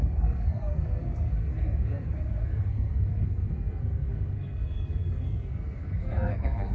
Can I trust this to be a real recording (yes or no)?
no